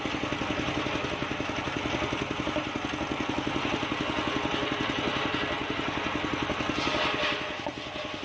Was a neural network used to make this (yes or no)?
no